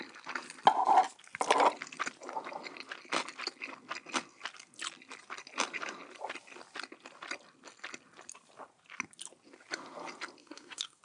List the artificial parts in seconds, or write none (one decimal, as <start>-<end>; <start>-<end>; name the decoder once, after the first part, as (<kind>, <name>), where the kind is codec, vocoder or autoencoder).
10.4-11.0 (codec, SNAC)